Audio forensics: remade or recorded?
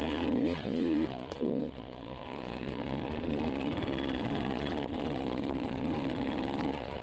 remade